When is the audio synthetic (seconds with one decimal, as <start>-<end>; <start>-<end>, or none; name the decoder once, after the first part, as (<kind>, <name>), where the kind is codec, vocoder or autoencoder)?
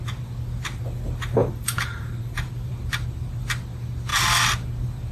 1.4-2.7 (vocoder, BigVGAN v2)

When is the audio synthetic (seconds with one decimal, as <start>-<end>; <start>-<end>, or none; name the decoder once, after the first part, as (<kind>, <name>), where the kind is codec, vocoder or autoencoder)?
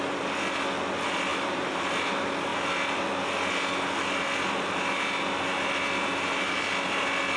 1.3-2.1 (vocoder, BigVGAN v2); 6.1-6.7